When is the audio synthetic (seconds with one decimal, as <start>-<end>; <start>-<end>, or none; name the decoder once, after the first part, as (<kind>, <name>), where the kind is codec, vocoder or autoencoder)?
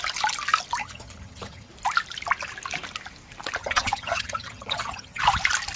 0.8-1.7 (vocoder, HiFi-GAN); 3.6-5.2